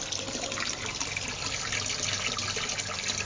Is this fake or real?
real